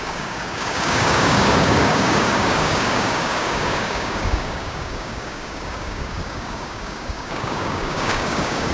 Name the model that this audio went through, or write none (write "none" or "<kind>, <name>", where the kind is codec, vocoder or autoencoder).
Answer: codec, DAC